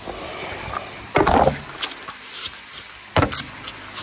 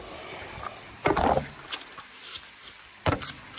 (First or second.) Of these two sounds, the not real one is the second